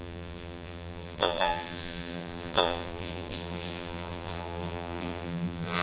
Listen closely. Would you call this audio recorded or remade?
remade